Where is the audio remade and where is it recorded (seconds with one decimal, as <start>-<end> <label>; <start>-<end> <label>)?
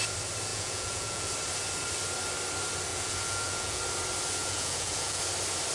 0.0-0.5 recorded; 0.5-1.3 remade; 1.3-2.9 recorded; 2.9-3.8 remade; 3.8-4.4 recorded; 4.4-5.2 remade; 5.2-5.7 recorded